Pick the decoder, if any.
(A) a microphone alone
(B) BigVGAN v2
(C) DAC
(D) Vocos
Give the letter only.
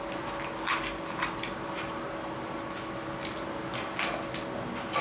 A